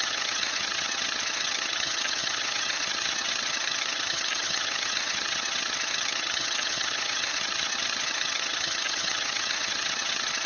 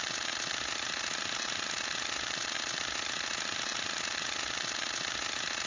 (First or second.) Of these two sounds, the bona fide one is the second